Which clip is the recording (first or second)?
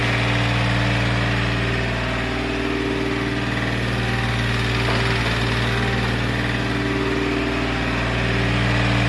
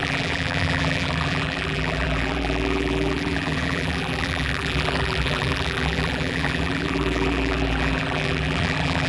first